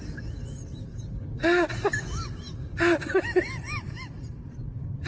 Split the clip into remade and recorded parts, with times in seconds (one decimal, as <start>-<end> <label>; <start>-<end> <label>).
0.0-5.1 recorded